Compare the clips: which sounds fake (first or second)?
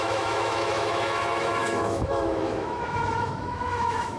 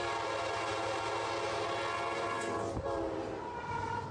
first